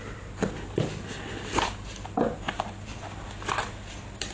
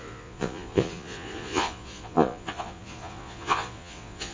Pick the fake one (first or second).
second